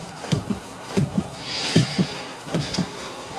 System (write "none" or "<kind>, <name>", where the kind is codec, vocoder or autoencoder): codec, SNAC